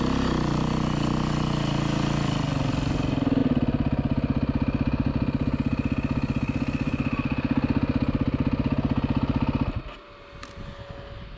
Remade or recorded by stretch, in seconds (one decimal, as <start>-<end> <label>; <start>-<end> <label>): 0.0-11.4 recorded